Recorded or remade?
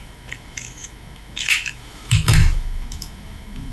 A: remade